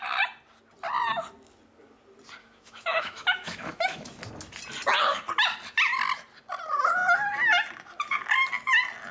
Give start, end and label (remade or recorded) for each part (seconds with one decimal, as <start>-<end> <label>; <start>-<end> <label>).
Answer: 0.0-2.4 recorded; 2.4-4.2 remade; 4.2-9.1 recorded